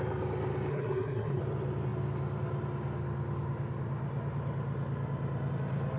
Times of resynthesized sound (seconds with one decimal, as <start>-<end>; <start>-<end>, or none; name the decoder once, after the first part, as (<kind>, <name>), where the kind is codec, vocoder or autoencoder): 0.7-1.4 (codec, SNAC)